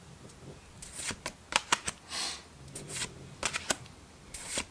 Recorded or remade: recorded